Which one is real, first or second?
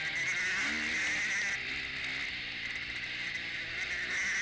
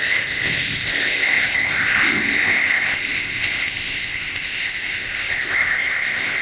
first